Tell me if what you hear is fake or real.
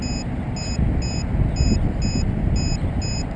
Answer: real